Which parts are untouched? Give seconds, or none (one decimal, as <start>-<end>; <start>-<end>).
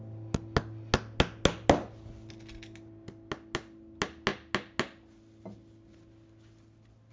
0.0-7.1